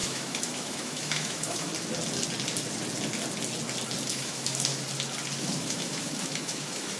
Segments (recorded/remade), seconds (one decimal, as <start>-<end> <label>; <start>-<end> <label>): 0.0-1.7 remade; 1.7-4.1 recorded; 4.1-4.7 remade; 4.7-5.4 recorded; 5.4-7.0 remade